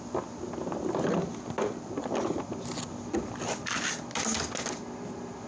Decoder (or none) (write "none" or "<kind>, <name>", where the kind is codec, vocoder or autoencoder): none